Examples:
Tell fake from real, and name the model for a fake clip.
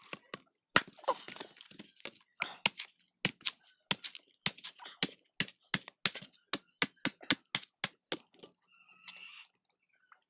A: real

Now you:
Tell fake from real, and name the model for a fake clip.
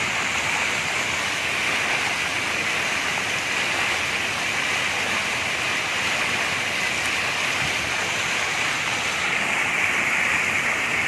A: real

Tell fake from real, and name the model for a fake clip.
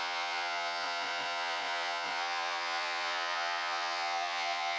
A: fake, vocoder, Vocos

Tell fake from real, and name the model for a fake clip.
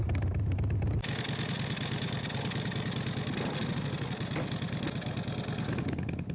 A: real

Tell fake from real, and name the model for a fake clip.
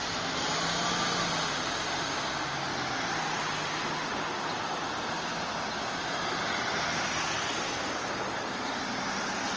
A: real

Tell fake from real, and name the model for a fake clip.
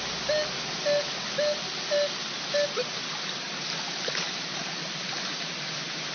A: real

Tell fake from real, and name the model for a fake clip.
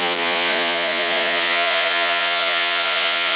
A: fake, vocoder, Vocos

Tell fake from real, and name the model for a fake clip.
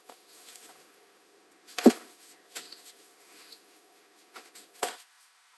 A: fake, autoencoder, DAC-VAE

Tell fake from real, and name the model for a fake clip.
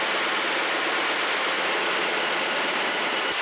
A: real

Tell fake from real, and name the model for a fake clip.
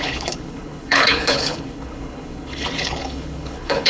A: fake, codec, HILCodec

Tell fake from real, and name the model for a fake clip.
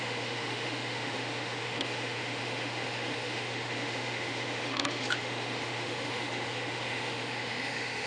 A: fake, autoencoder, DAC-VAE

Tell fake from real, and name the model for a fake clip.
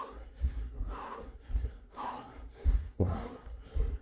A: fake, codec, SNAC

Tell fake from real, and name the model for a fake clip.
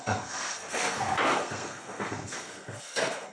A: fake, codec, SNAC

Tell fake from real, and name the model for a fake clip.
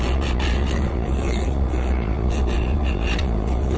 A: fake, vocoder, Vocos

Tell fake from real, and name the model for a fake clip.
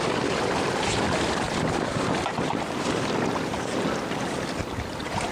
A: real